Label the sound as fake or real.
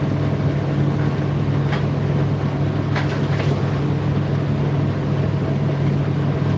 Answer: real